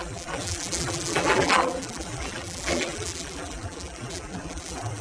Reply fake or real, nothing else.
fake